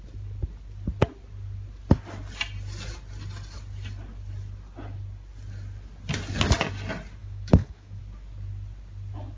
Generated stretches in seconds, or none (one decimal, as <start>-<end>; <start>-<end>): 7.2-8.0